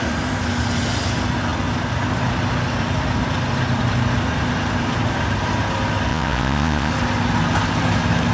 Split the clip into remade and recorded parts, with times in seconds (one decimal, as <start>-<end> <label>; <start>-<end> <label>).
0.0-6.1 recorded; 6.1-6.9 remade; 6.9-8.3 recorded